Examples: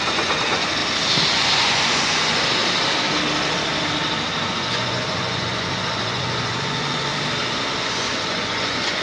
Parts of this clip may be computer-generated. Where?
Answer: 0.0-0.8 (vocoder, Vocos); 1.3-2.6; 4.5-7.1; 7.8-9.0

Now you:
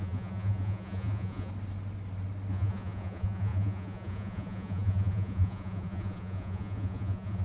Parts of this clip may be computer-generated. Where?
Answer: 0.0-1.5 (vocoder, Vocos); 2.5-7.4

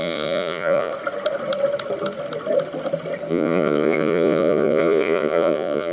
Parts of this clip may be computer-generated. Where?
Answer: 0.0-0.9 (vocoder, Vocos); 3.3-5.9

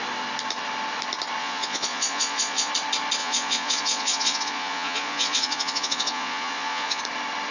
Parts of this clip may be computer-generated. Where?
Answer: 1.4-2.7 (vocoder, Vocos); 3.2-7.0

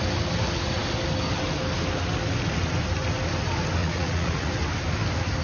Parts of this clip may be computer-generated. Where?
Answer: 3.8-4.5 (vocoder, Vocos)